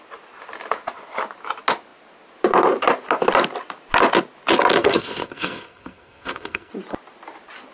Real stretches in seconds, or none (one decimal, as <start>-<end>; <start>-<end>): 0.0-4.8; 6.7-7.7